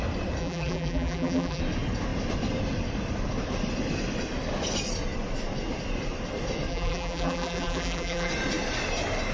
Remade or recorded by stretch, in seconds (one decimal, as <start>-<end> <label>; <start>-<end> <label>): 0.0-0.4 recorded; 0.4-1.6 remade; 1.6-6.7 recorded; 6.7-8.3 remade; 8.3-9.3 recorded